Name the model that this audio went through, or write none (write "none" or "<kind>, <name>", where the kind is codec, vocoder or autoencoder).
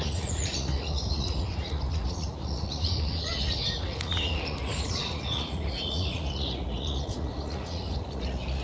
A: vocoder, Vocos